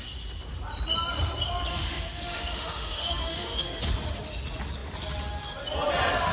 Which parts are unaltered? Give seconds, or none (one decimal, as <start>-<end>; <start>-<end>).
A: 0.0-1.7; 3.8-6.3